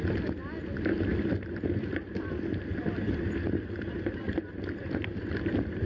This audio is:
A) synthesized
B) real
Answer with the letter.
A